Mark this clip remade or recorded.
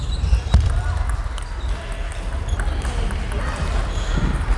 recorded